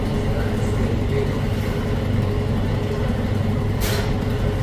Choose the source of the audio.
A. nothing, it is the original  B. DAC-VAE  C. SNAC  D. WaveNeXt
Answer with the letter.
A